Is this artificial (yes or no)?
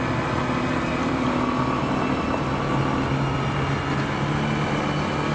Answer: no